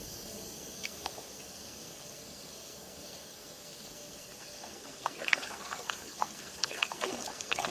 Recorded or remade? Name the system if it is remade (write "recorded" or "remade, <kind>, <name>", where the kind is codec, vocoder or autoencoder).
remade, codec, SNAC